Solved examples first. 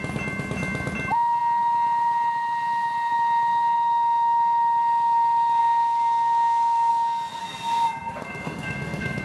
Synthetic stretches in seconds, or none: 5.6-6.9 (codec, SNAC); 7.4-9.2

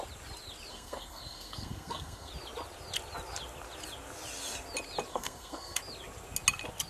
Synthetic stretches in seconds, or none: 0.7-2.3 (codec, SNAC); 5.1-5.8

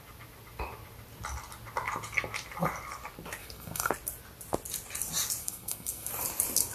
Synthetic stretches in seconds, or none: 3.4-3.9 (codec, SNAC); 5.4-6.1